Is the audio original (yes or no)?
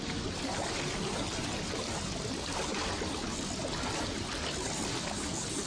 yes